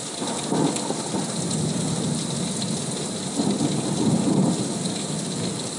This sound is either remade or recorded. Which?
recorded